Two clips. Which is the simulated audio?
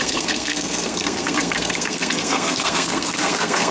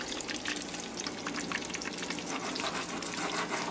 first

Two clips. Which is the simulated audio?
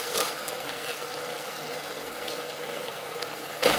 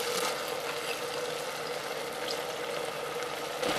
first